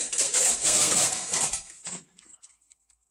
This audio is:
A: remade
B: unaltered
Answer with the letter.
A